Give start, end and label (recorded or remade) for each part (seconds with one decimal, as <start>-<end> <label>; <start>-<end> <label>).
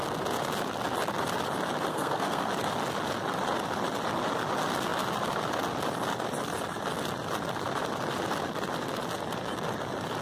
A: 0.0-1.9 recorded; 1.9-2.5 remade; 2.5-10.2 recorded